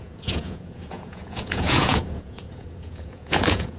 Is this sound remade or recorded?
remade